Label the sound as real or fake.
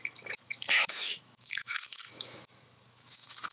fake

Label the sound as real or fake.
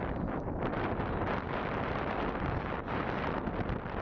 real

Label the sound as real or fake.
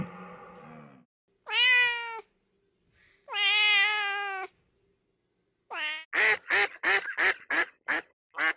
real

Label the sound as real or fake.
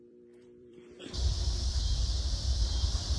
fake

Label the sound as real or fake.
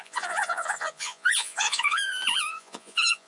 fake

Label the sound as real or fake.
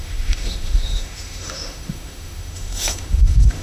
fake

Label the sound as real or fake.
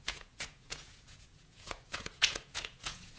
fake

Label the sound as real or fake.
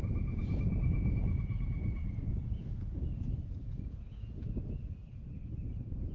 fake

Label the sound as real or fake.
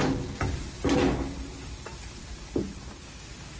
real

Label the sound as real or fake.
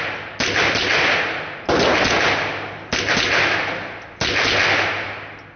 real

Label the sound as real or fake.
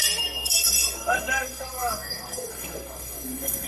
fake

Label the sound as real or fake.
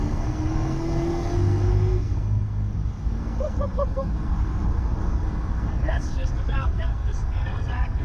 fake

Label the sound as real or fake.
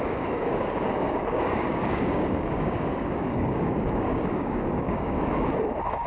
fake